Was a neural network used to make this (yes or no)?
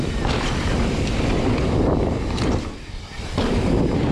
yes